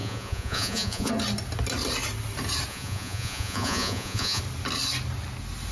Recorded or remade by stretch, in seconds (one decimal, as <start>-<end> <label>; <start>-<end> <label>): 0.0-1.1 remade; 1.1-2.7 recorded; 2.7-4.4 remade; 4.4-5.7 recorded